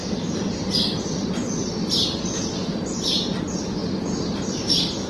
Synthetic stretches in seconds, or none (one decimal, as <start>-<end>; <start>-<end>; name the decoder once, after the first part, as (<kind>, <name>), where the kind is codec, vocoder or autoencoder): none